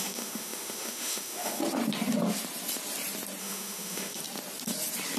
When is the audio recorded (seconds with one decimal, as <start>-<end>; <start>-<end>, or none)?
1.6-3.4; 4.2-5.2